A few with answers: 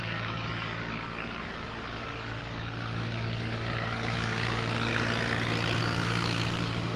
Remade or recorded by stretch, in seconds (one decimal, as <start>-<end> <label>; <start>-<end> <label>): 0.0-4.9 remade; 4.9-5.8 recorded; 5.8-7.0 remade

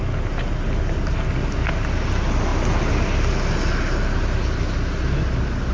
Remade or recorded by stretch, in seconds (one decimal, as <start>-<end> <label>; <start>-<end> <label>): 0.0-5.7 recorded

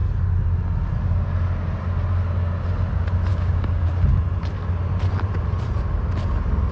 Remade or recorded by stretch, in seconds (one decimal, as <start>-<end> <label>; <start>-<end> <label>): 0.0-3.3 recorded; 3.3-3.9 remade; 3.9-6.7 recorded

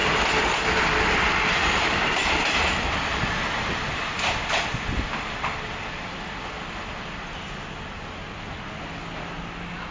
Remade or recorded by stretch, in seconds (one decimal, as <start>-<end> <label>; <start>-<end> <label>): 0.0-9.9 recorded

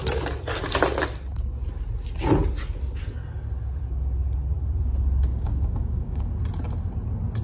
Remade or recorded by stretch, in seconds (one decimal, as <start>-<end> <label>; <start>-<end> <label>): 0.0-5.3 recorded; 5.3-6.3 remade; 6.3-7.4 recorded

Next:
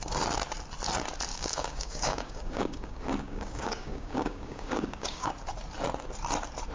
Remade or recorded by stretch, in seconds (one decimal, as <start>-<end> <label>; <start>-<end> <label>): 0.0-1.3 recorded; 1.3-5.3 remade; 5.3-6.7 recorded

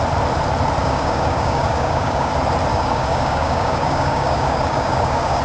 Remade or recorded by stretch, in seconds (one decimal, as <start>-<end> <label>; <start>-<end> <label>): 0.0-0.8 recorded; 0.8-2.3 remade; 2.3-2.7 recorded; 2.7-5.4 remade